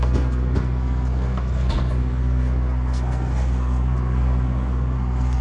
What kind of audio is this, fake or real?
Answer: fake